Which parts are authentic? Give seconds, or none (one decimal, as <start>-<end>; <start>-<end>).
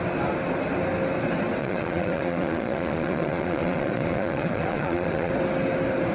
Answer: 0.0-1.6; 5.3-6.1